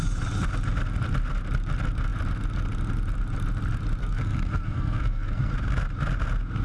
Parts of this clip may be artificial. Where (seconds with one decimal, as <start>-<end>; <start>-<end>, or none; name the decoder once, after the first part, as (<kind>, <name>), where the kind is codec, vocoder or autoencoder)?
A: 4.0-5.5 (codec, SNAC)